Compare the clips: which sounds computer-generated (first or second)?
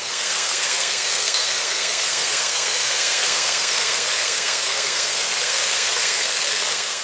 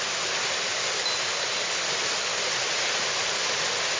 first